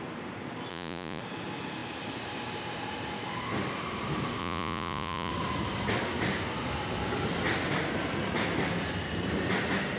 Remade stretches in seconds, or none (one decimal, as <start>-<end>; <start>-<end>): 0.7-1.2; 4.4-5.3